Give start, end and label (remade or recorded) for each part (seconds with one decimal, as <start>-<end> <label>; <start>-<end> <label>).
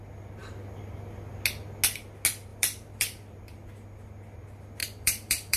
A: 0.0-2.5 recorded; 2.5-3.7 remade; 3.7-4.8 recorded; 4.8-5.6 remade